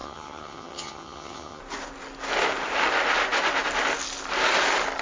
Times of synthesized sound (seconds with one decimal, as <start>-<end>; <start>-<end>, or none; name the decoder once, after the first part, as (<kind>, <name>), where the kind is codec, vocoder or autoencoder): 0.0-1.6 (vocoder, HiFi-GAN)

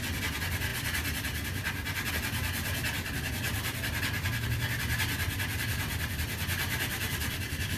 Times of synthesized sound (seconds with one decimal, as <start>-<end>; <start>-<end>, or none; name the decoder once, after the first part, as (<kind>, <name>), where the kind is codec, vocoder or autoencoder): none

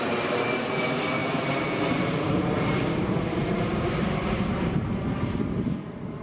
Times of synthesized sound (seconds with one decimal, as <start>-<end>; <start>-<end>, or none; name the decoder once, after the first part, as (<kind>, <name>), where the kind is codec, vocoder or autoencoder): 0.0-0.6 (vocoder, BigVGAN v2); 1.2-4.9

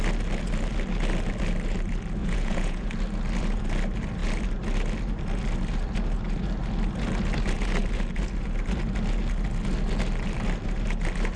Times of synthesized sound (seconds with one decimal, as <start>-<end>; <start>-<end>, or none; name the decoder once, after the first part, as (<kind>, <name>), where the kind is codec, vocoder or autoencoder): 2.2-2.9 (vocoder, Vocos)

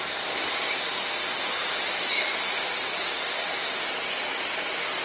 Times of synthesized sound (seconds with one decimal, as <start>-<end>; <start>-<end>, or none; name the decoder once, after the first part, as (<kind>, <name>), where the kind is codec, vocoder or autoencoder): 1.4-2.3 (vocoder, BigVGAN v2)

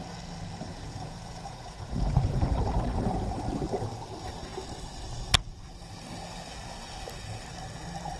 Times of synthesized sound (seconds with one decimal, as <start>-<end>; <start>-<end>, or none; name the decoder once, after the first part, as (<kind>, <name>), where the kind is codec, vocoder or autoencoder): 0.7-2.4 (vocoder, Vocos)

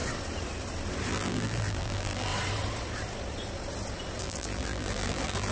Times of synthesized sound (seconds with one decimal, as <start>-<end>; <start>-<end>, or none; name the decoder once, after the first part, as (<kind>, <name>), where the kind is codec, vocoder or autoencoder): 1.1-2.3 (vocoder, BigVGAN v2); 4.2-5.5

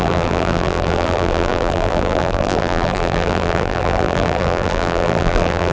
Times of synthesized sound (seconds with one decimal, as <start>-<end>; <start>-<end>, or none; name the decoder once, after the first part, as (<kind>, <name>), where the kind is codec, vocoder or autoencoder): 0.0-5.7 (vocoder, BigVGAN v2)